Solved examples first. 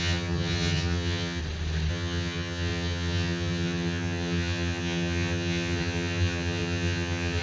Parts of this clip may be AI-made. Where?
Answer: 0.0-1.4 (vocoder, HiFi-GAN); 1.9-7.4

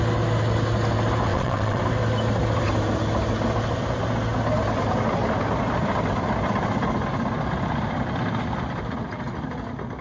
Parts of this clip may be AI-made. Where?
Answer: 1.3-1.8 (vocoder, WaveNeXt)

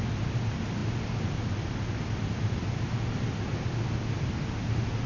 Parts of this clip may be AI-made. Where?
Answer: none

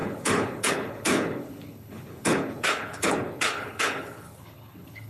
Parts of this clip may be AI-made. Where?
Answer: 0.0-5.1 (codec, HILCodec)

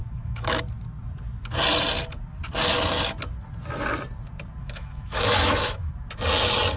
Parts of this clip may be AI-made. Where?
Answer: 0.0-0.6 (autoencoder, DAC-VAE); 4.6-5.9